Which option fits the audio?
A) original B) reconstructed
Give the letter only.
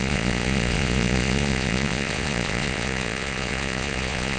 B